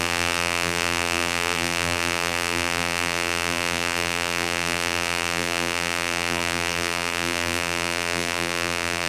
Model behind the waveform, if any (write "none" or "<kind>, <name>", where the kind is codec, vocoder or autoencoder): vocoder, BigVGAN v2